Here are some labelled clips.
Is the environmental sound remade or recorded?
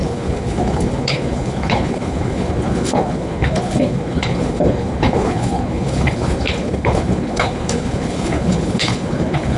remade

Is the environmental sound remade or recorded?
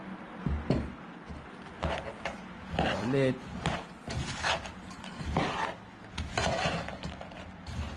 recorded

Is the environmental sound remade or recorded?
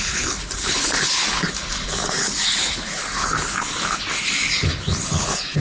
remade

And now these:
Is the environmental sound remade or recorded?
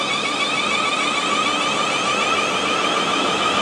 recorded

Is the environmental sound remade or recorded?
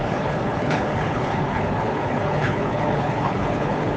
remade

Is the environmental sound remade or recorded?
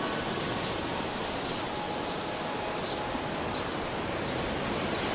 recorded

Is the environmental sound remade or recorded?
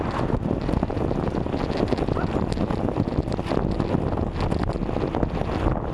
recorded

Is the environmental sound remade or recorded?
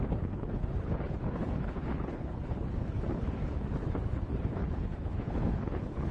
remade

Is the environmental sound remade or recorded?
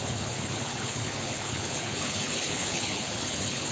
remade